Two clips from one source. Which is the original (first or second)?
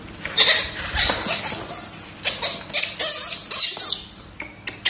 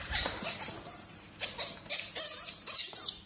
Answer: first